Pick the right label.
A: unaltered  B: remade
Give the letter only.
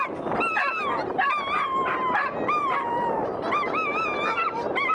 B